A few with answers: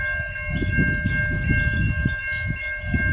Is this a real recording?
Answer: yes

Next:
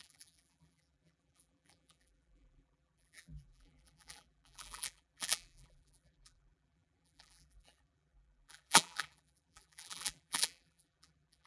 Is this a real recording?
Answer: no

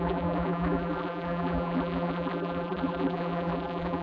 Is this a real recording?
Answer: no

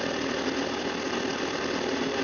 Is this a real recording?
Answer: yes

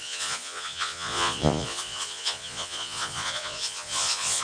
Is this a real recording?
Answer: no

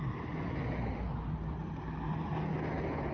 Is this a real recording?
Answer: yes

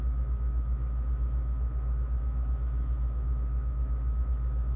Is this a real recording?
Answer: no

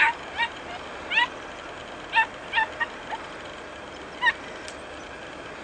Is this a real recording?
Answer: yes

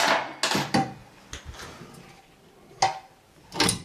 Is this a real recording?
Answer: yes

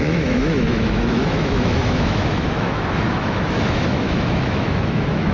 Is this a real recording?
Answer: no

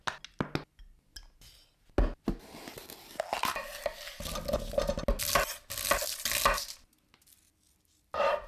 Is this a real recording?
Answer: yes